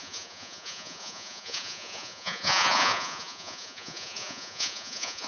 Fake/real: fake